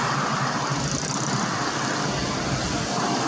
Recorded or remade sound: recorded